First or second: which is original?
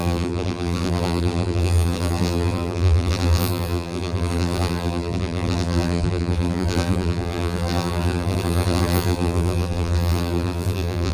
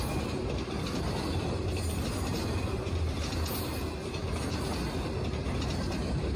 second